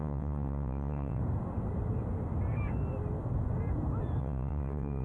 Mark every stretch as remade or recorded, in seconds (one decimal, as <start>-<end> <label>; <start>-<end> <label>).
0.0-1.2 remade; 1.2-4.2 recorded; 4.2-5.0 remade